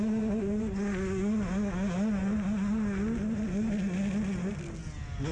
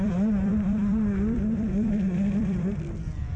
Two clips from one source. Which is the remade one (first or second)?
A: second